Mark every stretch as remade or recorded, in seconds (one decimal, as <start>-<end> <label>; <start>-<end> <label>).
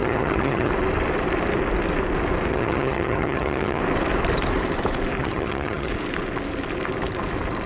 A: 0.0-0.7 remade; 0.7-2.5 recorded; 2.5-3.8 remade; 3.8-5.2 recorded; 5.2-5.9 remade; 5.9-7.7 recorded